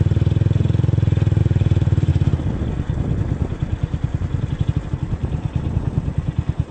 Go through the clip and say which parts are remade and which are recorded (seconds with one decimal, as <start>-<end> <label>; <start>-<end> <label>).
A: 0.0-1.4 recorded; 1.4-2.1 remade; 2.1-5.2 recorded; 5.2-6.7 remade